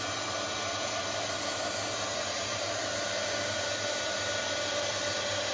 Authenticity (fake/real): real